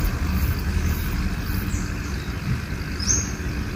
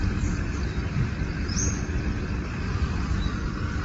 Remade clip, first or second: second